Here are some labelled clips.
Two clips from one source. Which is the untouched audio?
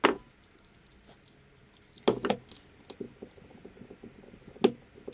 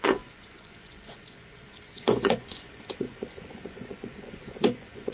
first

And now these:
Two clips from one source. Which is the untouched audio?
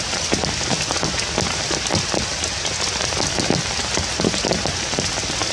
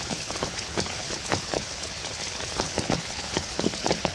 first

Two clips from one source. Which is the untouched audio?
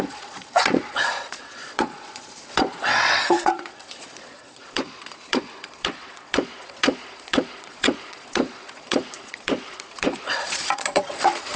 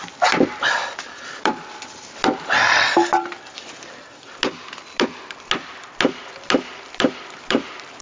second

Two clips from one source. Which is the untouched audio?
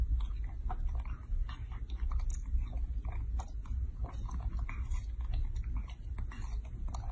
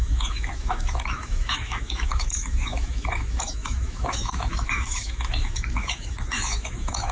first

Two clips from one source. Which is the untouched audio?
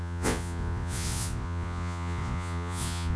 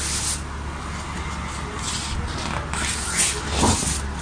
second